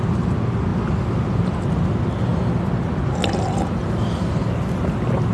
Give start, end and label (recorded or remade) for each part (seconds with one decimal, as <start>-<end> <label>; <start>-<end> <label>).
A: 0.0-5.3 recorded